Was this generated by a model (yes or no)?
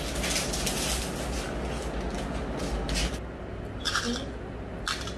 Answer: no